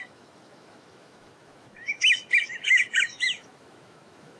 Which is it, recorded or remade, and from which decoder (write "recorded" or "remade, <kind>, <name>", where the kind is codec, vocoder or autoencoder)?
remade, autoencoder, DAC-VAE